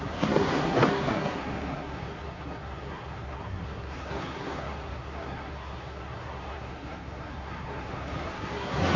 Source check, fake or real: fake